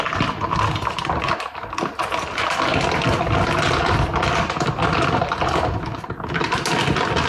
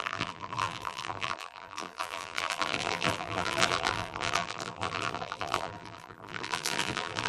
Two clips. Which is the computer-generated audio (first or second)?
second